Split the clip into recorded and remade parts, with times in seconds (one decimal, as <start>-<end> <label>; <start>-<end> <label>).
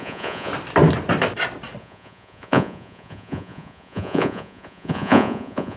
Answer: 0.0-0.5 remade; 0.5-1.8 recorded; 1.8-5.8 remade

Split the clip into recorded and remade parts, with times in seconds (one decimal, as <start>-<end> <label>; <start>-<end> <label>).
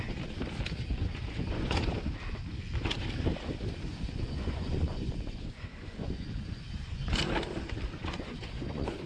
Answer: 0.0-1.0 recorded; 1.0-1.8 remade; 1.8-3.9 recorded; 3.9-7.3 remade; 7.3-8.0 recorded; 8.0-9.1 remade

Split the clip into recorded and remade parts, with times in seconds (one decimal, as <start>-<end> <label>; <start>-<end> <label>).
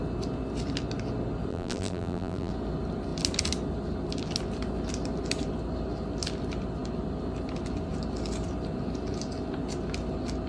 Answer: 0.0-1.5 recorded; 1.5-2.5 remade; 2.5-10.5 recorded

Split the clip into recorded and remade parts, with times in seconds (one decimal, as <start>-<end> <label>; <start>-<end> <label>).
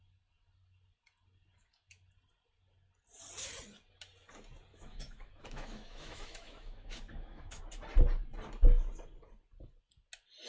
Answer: 0.0-4.7 recorded; 4.7-7.6 remade; 7.6-10.5 recorded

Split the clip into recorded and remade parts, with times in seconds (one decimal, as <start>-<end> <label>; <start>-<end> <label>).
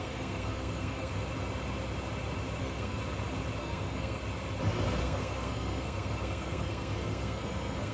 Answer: 0.0-1.1 remade; 1.1-2.6 recorded; 2.6-3.0 remade; 3.0-3.6 recorded; 3.6-4.2 remade; 4.2-5.0 recorded; 5.0-7.9 remade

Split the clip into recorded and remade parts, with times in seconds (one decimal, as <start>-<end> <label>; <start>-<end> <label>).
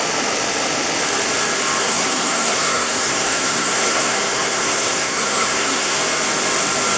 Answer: 0.0-1.8 recorded; 1.8-6.0 remade; 6.0-7.0 recorded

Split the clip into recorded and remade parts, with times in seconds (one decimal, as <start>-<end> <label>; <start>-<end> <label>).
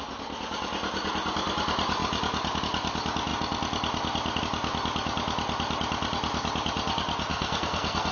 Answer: 0.0-7.3 recorded; 7.3-8.1 remade